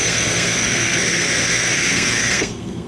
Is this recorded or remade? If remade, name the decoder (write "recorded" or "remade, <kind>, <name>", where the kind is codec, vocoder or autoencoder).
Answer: remade, codec, SNAC